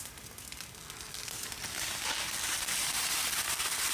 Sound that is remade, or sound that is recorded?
recorded